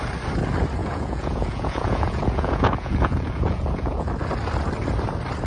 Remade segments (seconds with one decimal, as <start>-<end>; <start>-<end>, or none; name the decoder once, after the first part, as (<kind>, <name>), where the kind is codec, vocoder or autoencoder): 0.8-4.1 (vocoder, Vocos)